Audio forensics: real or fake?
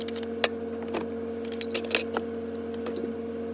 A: real